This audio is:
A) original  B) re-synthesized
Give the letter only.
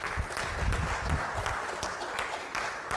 A